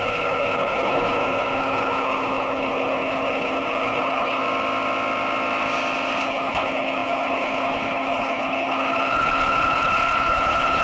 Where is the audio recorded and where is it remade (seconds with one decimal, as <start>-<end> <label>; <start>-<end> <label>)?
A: 0.0-4.4 remade; 4.4-6.2 recorded; 6.2-10.8 remade